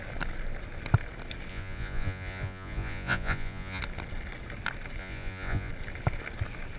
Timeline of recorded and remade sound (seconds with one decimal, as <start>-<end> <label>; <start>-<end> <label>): 0.0-1.5 recorded; 1.5-3.8 remade; 3.8-5.0 recorded; 5.0-5.7 remade; 5.7-6.8 recorded

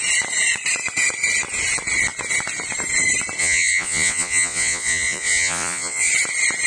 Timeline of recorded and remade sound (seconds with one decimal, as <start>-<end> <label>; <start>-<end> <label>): 0.0-3.4 recorded; 3.4-6.1 remade; 6.1-6.7 recorded

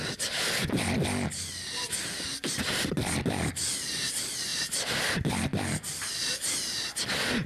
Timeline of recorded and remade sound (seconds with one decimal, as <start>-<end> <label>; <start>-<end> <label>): 0.0-7.5 recorded

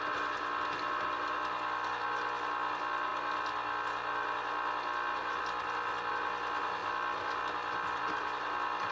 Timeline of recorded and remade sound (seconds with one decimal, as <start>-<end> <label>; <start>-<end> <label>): 0.0-8.9 recorded

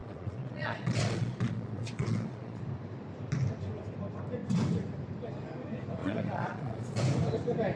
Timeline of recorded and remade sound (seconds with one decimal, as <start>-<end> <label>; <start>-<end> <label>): 0.0-2.6 remade; 2.6-6.0 recorded; 6.0-7.0 remade; 7.0-7.8 recorded